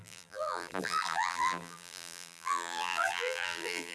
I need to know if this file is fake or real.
fake